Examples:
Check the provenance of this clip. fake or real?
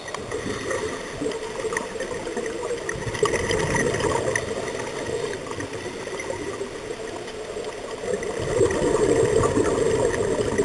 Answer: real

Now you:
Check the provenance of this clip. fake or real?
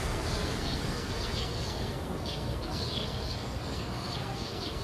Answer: fake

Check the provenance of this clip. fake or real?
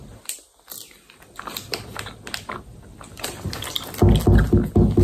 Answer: real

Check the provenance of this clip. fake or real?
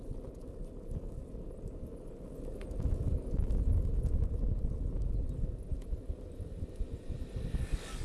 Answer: real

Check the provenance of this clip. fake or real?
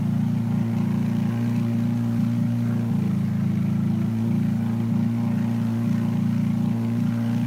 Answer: real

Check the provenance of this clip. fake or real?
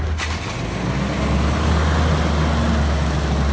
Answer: real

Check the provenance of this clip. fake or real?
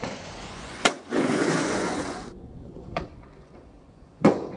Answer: fake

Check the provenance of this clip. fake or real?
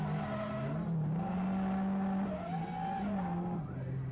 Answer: real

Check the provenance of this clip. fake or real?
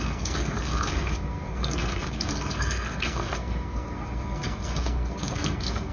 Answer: fake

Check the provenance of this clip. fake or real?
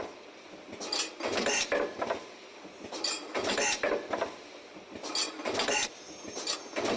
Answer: real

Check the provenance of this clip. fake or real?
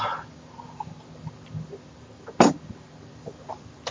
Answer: real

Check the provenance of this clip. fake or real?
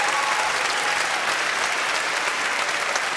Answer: real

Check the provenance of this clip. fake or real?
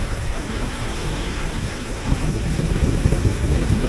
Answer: fake